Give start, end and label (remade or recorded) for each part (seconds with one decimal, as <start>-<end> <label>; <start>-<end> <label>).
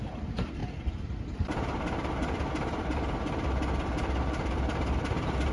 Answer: 0.0-5.5 recorded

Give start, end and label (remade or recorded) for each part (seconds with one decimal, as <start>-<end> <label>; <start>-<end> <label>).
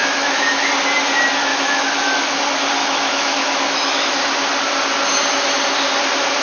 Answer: 0.0-0.7 remade; 0.7-1.5 recorded; 1.5-2.4 remade; 2.4-2.8 recorded; 2.8-4.1 remade; 4.1-6.4 recorded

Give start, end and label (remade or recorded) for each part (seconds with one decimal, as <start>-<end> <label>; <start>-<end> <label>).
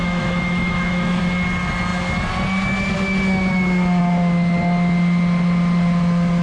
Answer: 0.0-1.2 remade; 1.2-6.4 recorded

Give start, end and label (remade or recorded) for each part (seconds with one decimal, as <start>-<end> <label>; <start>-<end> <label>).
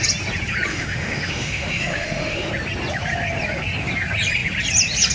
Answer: 0.0-0.7 recorded; 0.7-2.5 remade; 2.5-5.1 recorded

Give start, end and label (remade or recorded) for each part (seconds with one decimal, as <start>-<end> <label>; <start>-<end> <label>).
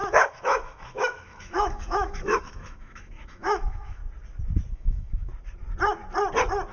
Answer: 0.0-4.0 remade; 4.0-4.7 recorded; 4.7-5.3 remade; 5.3-6.7 recorded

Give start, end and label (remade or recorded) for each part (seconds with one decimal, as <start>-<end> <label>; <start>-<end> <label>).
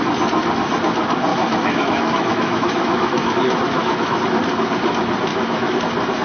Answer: 0.0-1.3 recorded; 1.3-4.2 remade; 4.2-5.3 recorded; 5.3-5.8 remade; 5.8-6.2 recorded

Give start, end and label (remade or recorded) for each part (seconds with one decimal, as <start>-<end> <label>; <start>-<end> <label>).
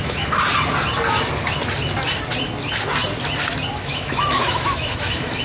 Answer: 0.0-0.5 remade; 0.5-3.7 recorded; 3.7-5.4 remade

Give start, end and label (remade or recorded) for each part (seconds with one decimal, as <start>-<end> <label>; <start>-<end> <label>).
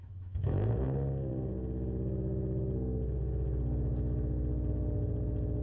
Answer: 0.0-0.7 remade; 0.7-5.6 recorded